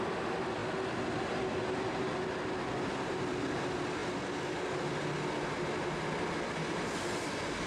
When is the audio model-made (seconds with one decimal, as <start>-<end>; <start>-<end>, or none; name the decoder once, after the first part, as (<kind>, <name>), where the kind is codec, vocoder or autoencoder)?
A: none